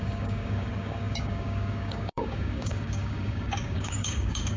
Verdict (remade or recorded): remade